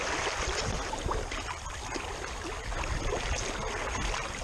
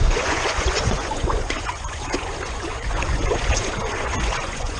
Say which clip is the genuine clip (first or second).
first